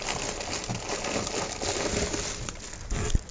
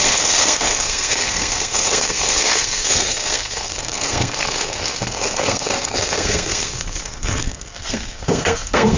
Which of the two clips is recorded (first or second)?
first